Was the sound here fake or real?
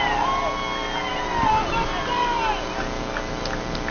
real